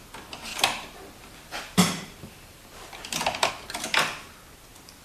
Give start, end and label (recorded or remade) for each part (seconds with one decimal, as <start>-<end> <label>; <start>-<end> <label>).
0.0-0.5 recorded; 0.5-3.5 remade; 3.5-5.0 recorded